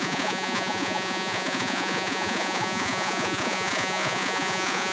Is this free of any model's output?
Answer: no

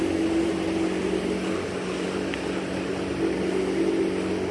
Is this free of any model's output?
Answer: yes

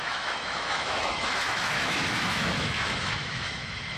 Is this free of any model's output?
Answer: no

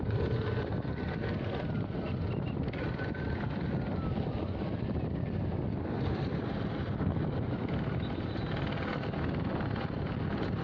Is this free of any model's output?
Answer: yes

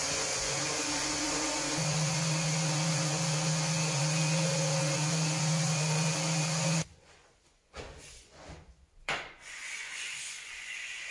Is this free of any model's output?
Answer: no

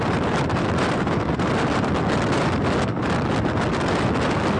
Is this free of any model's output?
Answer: yes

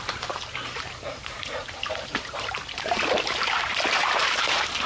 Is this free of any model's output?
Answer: no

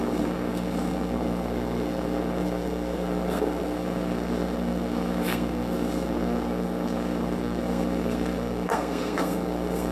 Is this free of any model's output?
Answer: no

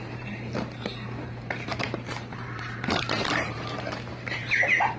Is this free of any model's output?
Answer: no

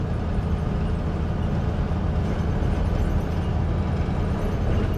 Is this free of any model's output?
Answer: yes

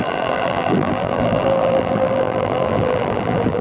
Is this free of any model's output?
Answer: no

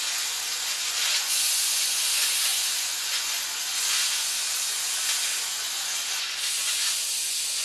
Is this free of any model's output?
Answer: no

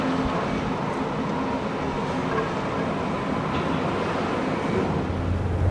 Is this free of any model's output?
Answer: yes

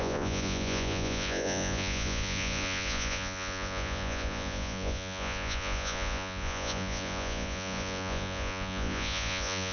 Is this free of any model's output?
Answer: no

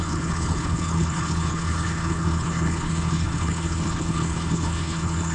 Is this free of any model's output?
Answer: no